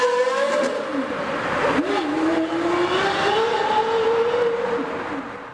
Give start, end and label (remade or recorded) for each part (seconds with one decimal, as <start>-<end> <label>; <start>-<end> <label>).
0.0-5.5 recorded